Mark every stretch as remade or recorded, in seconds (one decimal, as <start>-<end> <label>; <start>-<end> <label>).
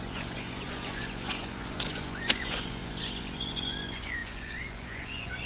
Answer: 0.0-5.5 remade